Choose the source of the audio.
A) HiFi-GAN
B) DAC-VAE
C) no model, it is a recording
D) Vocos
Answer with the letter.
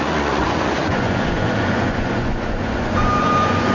D